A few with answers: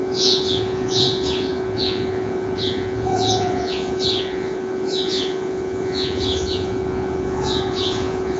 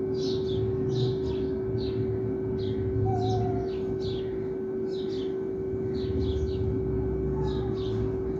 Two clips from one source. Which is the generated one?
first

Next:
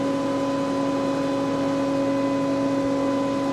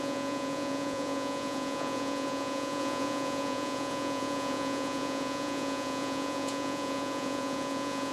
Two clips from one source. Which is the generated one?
second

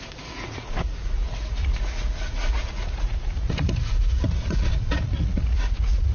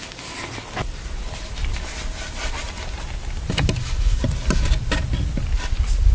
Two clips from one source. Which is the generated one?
first